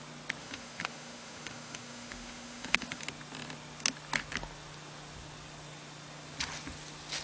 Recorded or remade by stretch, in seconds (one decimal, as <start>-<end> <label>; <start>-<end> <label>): 0.0-0.4 recorded; 0.4-3.0 remade; 3.0-7.2 recorded

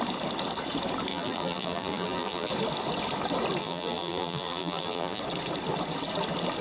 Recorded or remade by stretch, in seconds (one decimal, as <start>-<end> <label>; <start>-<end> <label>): 0.0-1.1 recorded; 1.1-2.5 remade; 2.5-3.6 recorded; 3.6-5.2 remade; 5.2-6.6 recorded

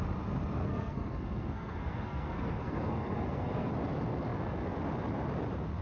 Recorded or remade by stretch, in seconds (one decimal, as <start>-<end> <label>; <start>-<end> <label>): 0.0-0.6 recorded; 0.6-3.7 remade; 3.7-5.8 recorded

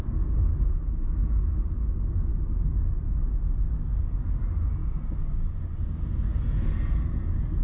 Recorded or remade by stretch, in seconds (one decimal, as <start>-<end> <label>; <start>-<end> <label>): 0.0-2.3 recorded; 2.3-3.2 remade; 3.2-7.6 recorded

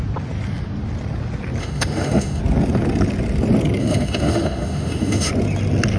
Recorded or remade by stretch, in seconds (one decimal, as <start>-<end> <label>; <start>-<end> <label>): 0.0-1.6 recorded; 1.6-2.4 remade; 2.4-3.8 recorded; 3.8-5.3 remade; 5.3-6.0 recorded